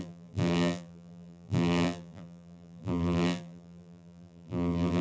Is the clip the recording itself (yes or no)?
no